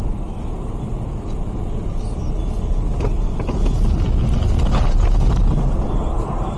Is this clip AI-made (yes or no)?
no